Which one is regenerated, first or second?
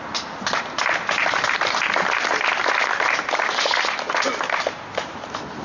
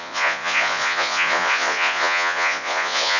second